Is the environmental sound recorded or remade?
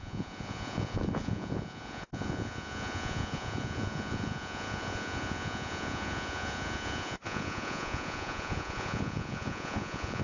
remade